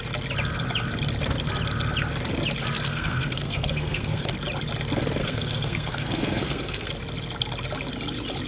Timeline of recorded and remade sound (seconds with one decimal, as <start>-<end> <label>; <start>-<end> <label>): 0.0-2.9 recorded; 2.9-4.3 remade; 4.3-5.2 recorded; 5.2-6.9 remade; 6.9-8.5 recorded